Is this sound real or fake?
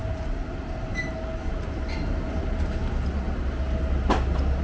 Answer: real